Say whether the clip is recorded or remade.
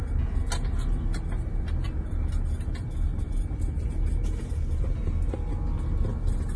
recorded